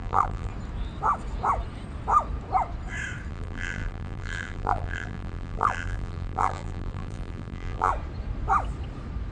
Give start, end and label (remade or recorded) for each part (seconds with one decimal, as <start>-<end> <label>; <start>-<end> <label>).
0.0-0.5 remade; 0.5-3.3 recorded; 3.3-7.9 remade; 7.9-9.3 recorded

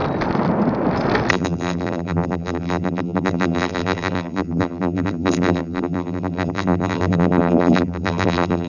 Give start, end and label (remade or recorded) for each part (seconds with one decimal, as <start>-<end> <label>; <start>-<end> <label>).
0.0-1.3 recorded; 1.3-8.7 remade

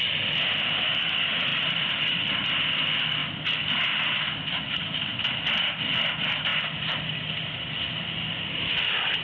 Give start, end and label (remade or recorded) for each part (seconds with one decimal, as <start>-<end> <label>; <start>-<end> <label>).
0.0-1.5 recorded; 1.5-2.5 remade; 2.5-6.5 recorded; 6.5-8.6 remade; 8.6-9.2 recorded

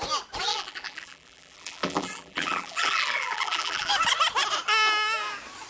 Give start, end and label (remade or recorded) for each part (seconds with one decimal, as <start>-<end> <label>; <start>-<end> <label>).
0.0-0.5 recorded; 0.5-3.9 remade; 3.9-5.7 recorded

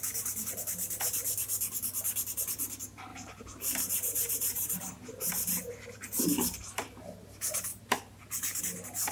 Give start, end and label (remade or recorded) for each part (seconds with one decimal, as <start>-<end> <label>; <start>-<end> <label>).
0.0-3.1 recorded; 3.1-5.3 remade; 5.3-9.1 recorded